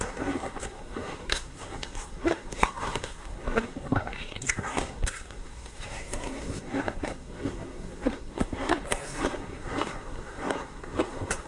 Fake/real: fake